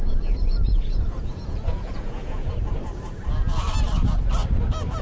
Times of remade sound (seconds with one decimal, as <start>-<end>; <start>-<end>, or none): 0.0-2.5